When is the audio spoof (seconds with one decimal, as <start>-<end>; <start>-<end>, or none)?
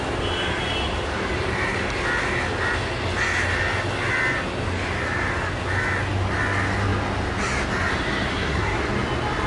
8.3-8.8